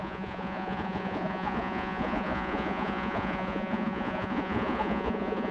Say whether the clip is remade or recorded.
remade